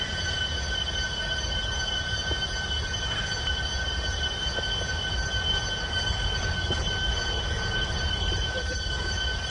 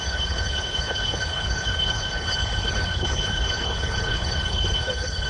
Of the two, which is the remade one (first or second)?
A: second